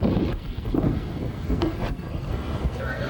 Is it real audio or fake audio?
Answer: fake